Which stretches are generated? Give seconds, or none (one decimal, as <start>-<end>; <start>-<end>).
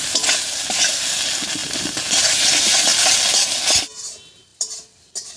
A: 1.6-2.5; 2.9-3.6; 4.5-5.4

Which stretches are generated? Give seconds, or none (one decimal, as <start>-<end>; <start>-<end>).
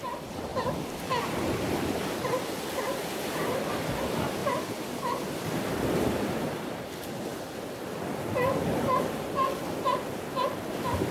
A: 0.0-7.3; 10.6-11.1